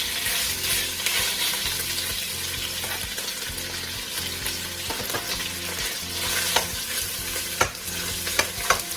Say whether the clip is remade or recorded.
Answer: recorded